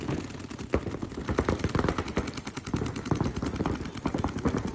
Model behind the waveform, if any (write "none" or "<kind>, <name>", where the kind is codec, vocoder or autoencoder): none